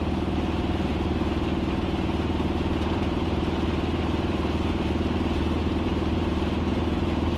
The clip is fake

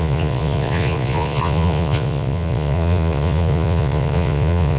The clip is fake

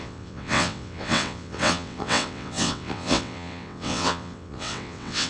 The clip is fake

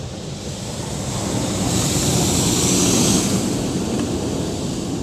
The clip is real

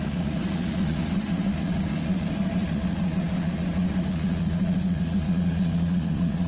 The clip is fake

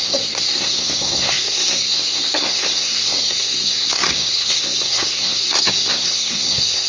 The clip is fake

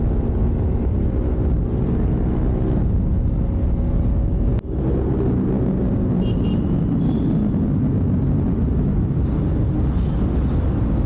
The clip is real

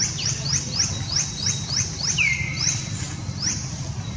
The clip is fake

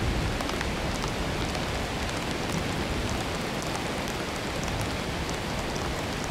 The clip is real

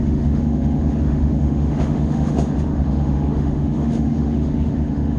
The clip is fake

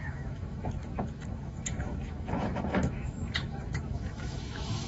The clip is fake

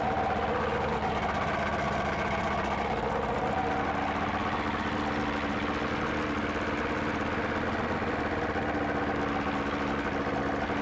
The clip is real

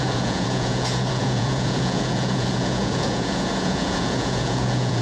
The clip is fake